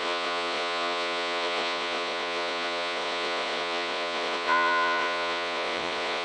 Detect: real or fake fake